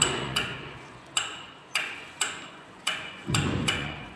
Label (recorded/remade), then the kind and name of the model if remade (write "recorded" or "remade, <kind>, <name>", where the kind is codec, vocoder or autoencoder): remade, vocoder, Vocos